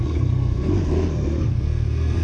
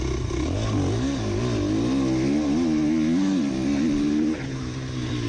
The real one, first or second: second